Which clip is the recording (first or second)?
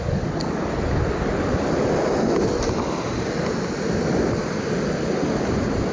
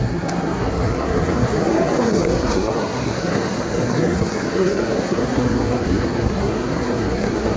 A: first